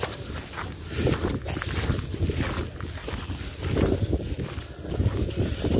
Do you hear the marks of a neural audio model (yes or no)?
no